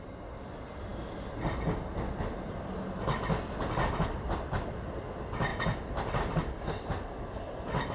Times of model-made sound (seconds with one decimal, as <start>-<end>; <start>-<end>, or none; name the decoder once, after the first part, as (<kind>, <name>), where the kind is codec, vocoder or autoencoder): none